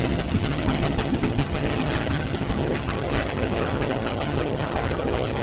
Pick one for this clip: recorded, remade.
remade